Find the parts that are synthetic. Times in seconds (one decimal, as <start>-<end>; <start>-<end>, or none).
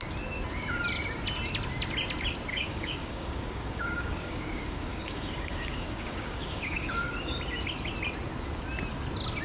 2.5-7.4